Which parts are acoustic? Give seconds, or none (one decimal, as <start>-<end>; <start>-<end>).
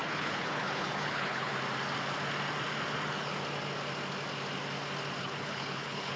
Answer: 1.5-5.2